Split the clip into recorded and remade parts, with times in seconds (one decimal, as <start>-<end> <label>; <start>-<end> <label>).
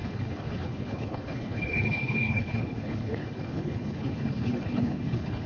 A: 0.0-5.5 remade